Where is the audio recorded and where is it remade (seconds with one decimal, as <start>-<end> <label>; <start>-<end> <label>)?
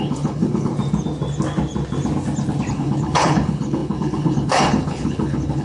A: 0.0-0.7 remade; 0.7-2.7 recorded; 2.7-5.6 remade